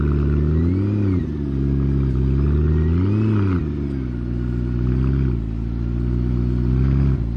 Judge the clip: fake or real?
real